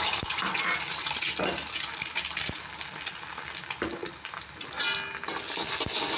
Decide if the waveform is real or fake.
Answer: real